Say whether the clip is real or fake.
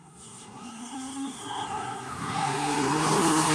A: fake